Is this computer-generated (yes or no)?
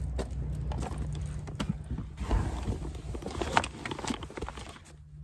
no